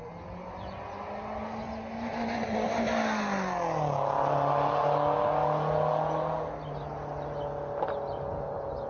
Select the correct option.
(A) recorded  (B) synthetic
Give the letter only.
A